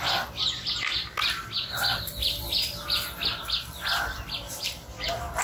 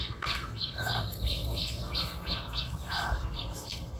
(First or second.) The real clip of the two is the first